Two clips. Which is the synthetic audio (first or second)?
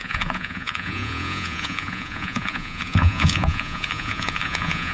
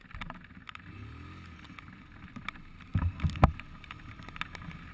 first